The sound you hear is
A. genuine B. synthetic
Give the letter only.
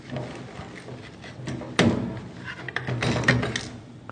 A